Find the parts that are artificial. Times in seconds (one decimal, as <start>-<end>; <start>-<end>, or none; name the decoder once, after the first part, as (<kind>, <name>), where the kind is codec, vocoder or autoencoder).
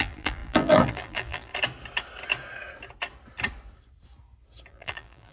0.0-1.5 (vocoder, BigVGAN v2); 4.7-5.3